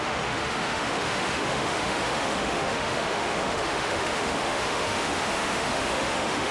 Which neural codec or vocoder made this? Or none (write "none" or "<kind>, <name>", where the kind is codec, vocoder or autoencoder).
autoencoder, DAC-VAE